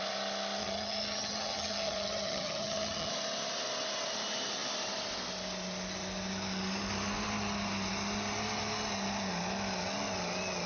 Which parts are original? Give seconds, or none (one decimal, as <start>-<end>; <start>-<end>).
0.0-0.6; 3.1-10.7